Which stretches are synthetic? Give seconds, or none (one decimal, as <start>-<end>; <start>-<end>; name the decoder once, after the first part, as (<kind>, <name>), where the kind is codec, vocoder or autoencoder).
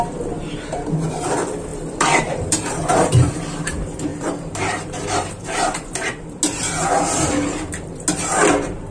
1.7-3.3 (vocoder, BigVGAN v2); 4.1-6.4